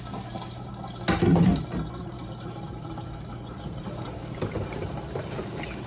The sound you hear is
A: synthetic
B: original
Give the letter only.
A